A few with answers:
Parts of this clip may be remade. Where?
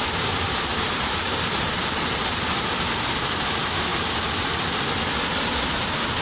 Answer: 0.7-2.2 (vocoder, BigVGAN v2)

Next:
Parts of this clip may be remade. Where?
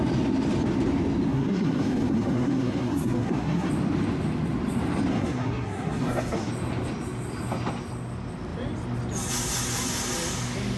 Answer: 1.3-3.7 (codec, SNAC); 5.1-6.5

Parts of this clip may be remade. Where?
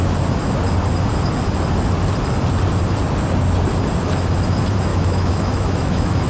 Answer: 4.9-6.3 (autoencoder, DAC-VAE)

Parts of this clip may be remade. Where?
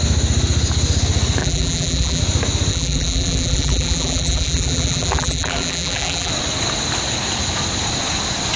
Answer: 1.4-2.2 (vocoder, BigVGAN v2); 2.7-6.3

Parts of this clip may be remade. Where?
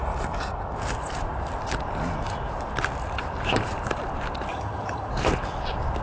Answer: 4.5-5.1 (vocoder, HiFi-GAN)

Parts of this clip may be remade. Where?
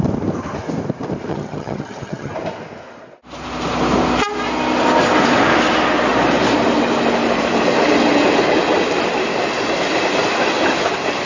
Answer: 1.3-2.3 (vocoder, HiFi-GAN)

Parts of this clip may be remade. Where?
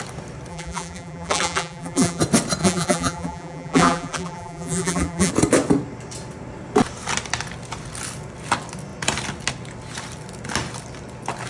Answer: 0.5-2.2 (vocoder, BigVGAN v2); 2.6-5.3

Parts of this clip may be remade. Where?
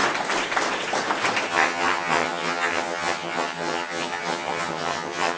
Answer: 1.5-5.4 (vocoder, HiFi-GAN)